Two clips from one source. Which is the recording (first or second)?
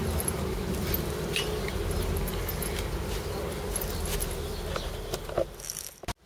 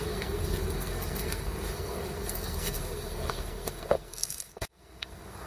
first